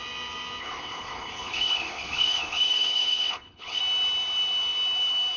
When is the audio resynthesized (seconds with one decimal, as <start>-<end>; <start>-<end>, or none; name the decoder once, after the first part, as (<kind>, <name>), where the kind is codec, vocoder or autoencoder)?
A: 0.6-3.8 (codec, HILCodec)